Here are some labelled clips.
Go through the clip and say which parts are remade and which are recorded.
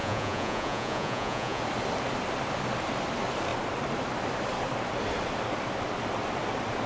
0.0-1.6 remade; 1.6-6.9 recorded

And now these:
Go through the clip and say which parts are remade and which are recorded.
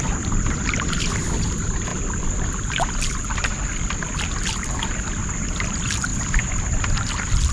0.0-6.1 remade; 6.1-6.6 recorded; 6.6-7.5 remade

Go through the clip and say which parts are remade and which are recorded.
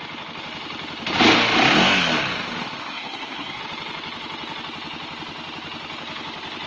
0.0-2.8 recorded; 2.8-3.6 remade; 3.6-6.7 recorded